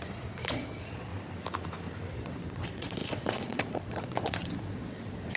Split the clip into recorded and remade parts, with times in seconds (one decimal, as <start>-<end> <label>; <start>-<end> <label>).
0.0-1.1 remade; 1.1-2.1 recorded; 2.1-5.4 remade